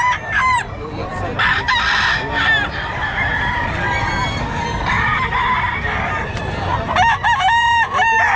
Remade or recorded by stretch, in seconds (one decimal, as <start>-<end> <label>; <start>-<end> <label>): 0.0-5.1 remade; 5.1-7.4 recorded; 7.4-8.4 remade